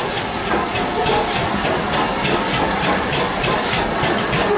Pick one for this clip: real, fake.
real